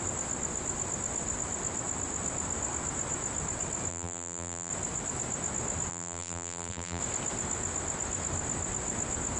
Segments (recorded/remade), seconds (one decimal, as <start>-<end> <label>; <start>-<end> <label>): 0.0-3.9 recorded; 3.9-4.7 remade; 4.7-5.9 recorded; 5.9-7.0 remade; 7.0-9.4 recorded